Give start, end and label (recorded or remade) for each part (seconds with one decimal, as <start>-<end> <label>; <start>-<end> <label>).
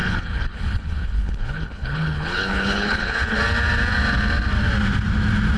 0.0-3.4 remade; 3.4-5.6 recorded